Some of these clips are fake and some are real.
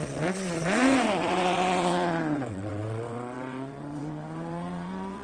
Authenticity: fake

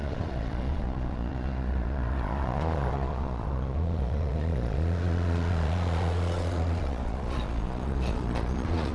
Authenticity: fake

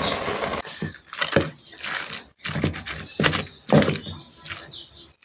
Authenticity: real